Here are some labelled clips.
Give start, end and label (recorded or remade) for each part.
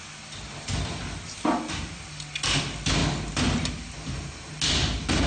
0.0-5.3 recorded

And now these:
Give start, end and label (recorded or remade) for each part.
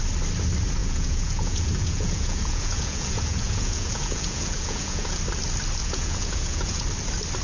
0.0-0.8 recorded; 0.8-5.2 remade; 5.2-5.8 recorded; 5.8-6.8 remade; 6.8-7.4 recorded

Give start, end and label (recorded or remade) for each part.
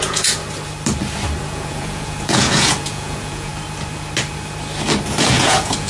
0.0-0.4 remade; 0.4-1.4 recorded; 1.4-3.5 remade; 3.5-5.3 recorded; 5.3-5.9 remade